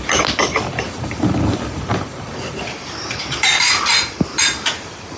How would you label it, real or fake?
fake